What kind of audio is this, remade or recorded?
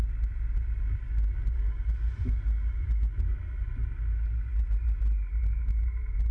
recorded